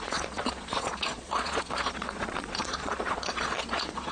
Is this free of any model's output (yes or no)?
no